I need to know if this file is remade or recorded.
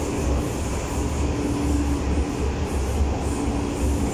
recorded